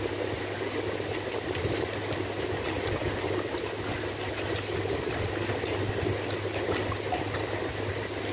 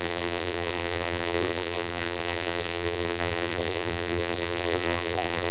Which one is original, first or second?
first